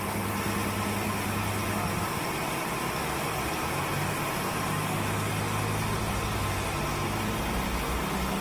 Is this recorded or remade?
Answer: recorded